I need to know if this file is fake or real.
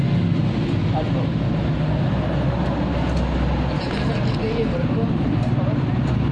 real